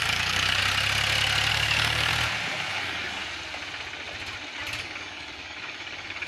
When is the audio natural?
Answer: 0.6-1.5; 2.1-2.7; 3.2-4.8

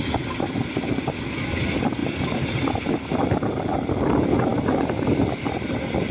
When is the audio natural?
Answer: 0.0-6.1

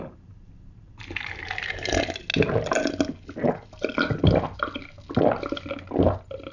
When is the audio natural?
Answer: 0.0-6.5